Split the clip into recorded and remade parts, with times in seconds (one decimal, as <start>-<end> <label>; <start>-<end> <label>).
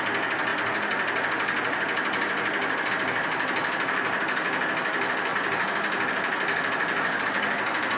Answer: 0.0-8.0 recorded